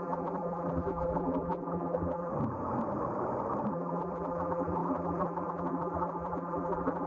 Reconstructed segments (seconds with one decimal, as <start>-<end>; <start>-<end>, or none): 0.0-2.3; 3.7-7.1